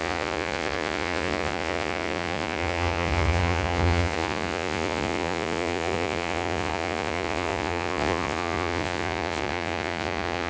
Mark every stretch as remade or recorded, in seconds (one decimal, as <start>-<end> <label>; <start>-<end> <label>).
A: 0.0-10.5 remade